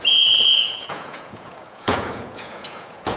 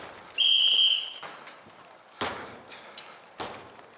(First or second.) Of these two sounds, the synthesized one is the first